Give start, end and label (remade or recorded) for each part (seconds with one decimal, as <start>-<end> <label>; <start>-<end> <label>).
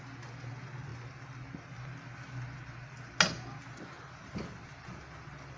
0.0-5.6 recorded